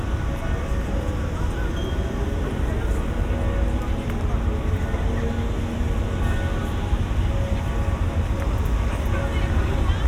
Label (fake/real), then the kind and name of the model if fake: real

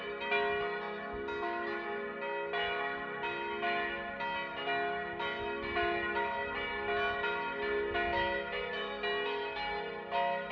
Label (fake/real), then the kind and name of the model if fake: real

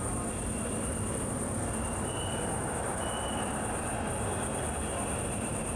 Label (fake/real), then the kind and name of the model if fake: real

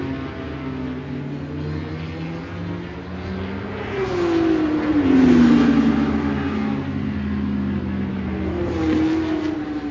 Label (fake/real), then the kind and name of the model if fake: real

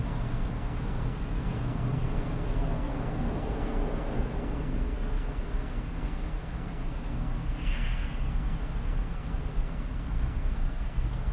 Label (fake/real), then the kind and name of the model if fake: fake, codec, SNAC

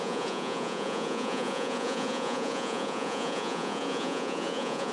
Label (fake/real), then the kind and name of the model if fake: fake, vocoder, Vocos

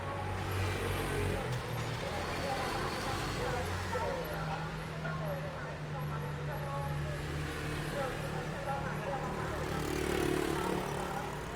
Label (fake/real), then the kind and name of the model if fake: real